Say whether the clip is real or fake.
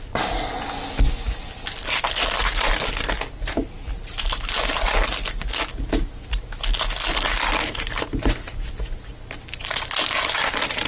real